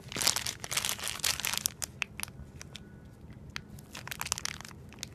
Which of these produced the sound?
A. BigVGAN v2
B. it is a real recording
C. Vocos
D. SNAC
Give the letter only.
B